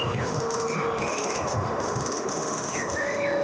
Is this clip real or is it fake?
fake